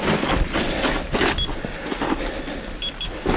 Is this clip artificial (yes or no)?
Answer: no